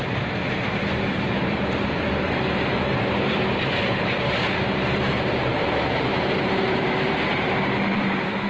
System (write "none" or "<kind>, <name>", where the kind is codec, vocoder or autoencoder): vocoder, BigVGAN v2